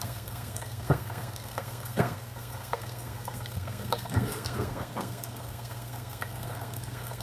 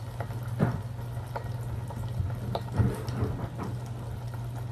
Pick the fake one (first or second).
first